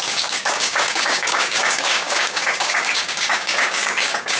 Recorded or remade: remade